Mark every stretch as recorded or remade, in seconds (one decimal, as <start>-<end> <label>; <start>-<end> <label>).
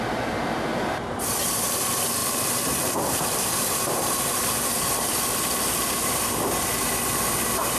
0.0-0.7 recorded; 0.7-1.6 remade; 1.6-2.2 recorded; 2.2-6.3 remade; 6.3-7.8 recorded